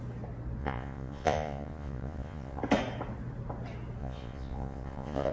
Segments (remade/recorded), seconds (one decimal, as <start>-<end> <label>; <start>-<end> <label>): 0.0-0.6 recorded; 0.6-2.6 remade; 2.6-4.0 recorded; 4.0-5.3 remade